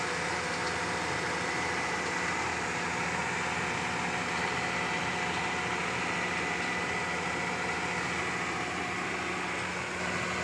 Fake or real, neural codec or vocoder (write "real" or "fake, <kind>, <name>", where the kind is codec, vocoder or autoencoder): real